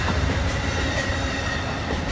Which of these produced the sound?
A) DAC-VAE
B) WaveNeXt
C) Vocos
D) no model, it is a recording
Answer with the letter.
D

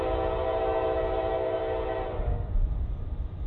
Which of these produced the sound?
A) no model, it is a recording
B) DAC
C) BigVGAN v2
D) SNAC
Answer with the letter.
A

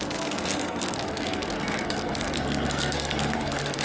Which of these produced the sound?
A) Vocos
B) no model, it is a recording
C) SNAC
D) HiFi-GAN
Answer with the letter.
C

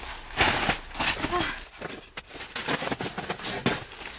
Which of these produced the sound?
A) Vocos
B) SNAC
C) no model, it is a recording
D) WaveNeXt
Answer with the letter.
C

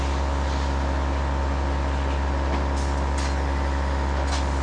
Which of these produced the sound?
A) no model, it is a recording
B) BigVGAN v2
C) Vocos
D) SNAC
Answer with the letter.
A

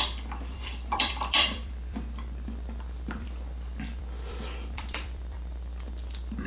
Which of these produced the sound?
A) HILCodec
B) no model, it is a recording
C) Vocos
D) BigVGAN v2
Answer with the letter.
D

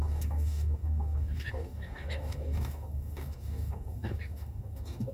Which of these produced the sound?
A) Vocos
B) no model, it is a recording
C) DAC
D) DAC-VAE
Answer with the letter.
C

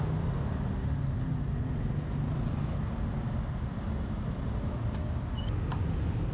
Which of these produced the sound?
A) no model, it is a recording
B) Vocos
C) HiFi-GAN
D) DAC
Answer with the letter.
A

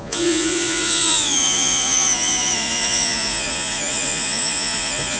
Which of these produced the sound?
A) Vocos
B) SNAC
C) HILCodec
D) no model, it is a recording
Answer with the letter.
A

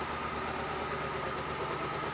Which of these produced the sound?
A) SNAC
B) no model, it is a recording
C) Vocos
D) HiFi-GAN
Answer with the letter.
B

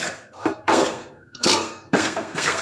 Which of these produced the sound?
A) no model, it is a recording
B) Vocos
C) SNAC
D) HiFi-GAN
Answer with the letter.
C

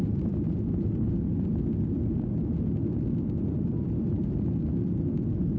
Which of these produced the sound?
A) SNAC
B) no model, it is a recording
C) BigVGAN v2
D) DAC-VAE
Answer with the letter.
B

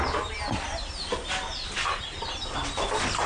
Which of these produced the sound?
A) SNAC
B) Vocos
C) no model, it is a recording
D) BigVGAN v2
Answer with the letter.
C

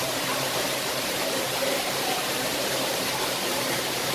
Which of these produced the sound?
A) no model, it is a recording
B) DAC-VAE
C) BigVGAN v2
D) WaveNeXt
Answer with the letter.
C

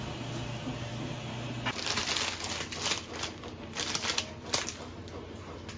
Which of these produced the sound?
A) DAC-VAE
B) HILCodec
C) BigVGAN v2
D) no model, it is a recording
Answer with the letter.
D